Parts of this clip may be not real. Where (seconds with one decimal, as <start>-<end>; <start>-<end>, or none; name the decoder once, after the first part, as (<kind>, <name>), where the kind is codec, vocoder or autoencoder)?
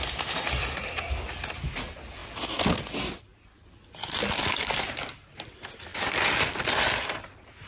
3.3-5.5 (vocoder, BigVGAN v2); 5.9-7.7